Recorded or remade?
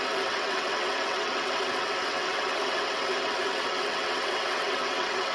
remade